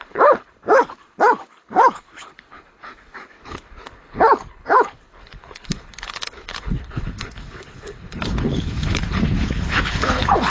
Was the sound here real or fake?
fake